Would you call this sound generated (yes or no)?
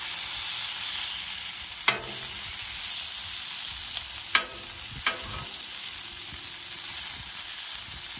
no